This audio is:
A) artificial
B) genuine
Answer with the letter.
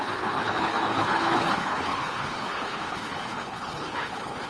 A